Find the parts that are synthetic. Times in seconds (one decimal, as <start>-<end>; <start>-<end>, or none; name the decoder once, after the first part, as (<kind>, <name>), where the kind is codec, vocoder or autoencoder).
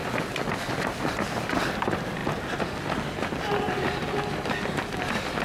none